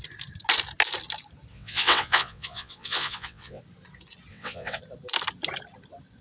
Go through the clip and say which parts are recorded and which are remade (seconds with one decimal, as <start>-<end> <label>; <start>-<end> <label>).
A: 0.0-1.5 recorded; 1.5-3.6 remade; 3.6-4.3 recorded; 4.3-4.8 remade; 4.8-6.2 recorded